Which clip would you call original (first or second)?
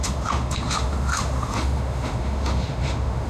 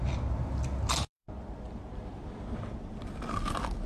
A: second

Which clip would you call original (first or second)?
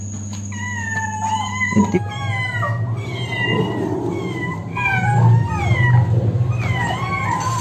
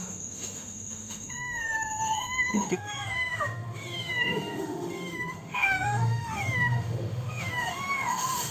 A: first